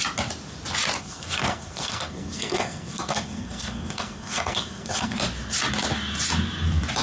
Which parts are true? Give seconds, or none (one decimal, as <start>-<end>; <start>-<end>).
0.0-1.0; 5.2-7.0